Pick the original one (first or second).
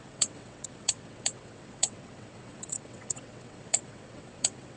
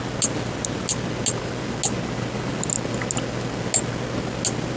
second